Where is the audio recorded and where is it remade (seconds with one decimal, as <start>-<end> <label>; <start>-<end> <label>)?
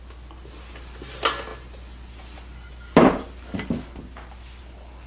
0.0-5.1 recorded